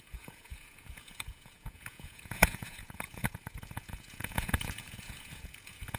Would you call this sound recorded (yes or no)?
no